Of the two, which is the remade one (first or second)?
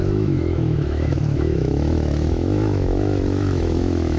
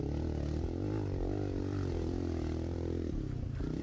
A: first